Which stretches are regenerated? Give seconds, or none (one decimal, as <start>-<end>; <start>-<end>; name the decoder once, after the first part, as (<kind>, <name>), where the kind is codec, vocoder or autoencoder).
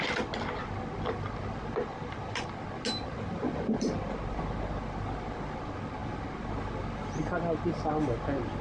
none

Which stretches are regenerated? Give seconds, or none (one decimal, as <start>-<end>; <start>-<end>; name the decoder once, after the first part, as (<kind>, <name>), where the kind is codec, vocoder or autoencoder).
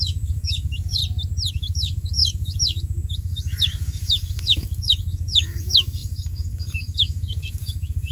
0.0-1.0 (codec, DAC); 1.5-8.1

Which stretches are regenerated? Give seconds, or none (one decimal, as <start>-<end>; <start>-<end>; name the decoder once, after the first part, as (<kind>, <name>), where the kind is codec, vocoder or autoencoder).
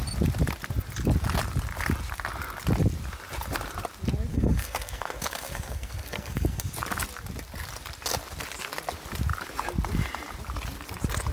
4.3-6.7 (codec, SNAC)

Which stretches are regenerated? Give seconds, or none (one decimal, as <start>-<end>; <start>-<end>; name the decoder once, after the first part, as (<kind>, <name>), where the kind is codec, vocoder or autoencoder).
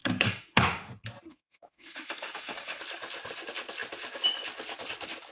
0.0-0.9 (autoencoder, DAC-VAE); 1.3-2.8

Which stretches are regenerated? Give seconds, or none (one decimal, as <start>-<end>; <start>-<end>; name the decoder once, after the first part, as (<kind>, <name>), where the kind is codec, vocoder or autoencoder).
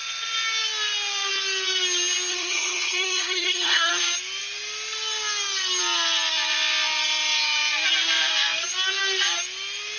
2.3-3.9 (codec, SNAC)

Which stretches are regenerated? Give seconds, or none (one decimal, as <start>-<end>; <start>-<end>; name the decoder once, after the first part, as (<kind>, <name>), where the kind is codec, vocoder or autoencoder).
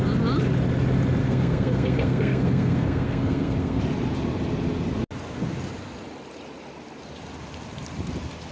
1.2-3.8 (codec, SNAC)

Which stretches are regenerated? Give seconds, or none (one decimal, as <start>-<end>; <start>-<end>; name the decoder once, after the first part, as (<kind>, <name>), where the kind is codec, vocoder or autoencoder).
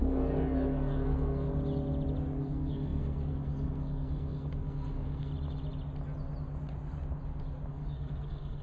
0.0-1.5 (codec, SNAC); 2.4-5.3; 7.7-8.6